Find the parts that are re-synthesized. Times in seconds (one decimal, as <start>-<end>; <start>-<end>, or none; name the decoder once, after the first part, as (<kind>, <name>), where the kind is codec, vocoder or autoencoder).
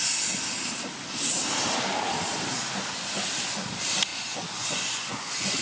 4.1-5.6 (vocoder, Vocos)